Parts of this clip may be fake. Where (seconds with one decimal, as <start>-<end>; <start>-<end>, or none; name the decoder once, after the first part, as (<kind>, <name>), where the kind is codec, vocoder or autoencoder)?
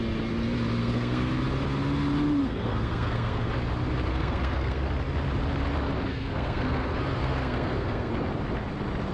0.8-1.3 (codec, SNAC); 2.4-3.5; 4.1-4.8; 6.1-8.1